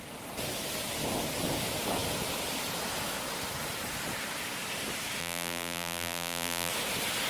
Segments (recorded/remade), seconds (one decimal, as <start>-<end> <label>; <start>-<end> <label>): 0.0-5.2 recorded; 5.2-6.7 remade; 6.7-7.3 recorded